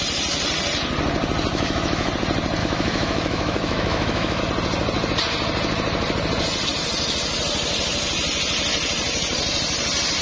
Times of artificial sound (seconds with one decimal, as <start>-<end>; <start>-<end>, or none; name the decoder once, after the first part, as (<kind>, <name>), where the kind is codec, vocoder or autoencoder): 1.5-2.1 (autoencoder, DAC-VAE); 2.6-4.4